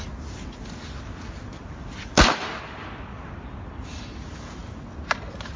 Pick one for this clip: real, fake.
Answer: real